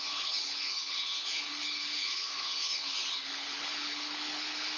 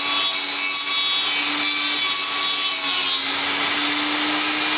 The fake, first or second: first